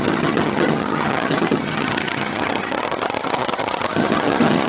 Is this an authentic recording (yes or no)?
no